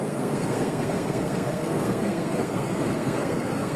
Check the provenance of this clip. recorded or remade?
remade